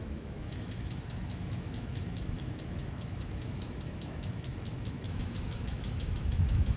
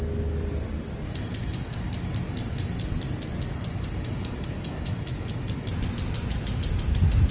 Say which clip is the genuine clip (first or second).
second